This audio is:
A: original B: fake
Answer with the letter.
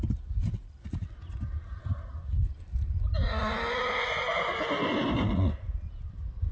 A